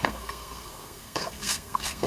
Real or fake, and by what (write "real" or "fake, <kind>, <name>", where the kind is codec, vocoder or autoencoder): fake, codec, SNAC